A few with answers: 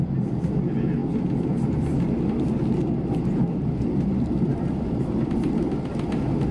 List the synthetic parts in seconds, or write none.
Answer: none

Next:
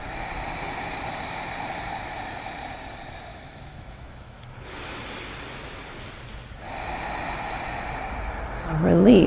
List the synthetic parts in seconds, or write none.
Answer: 3.3-4.4 (autoencoder, DAC-VAE)